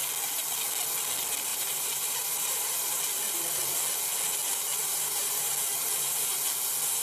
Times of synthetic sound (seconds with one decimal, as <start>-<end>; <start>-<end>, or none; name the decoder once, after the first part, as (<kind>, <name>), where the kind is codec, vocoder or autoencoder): 1.5-3.0 (vocoder, BigVGAN v2); 4.8-5.5